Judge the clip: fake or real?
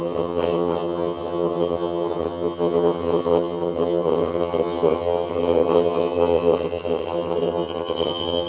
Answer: fake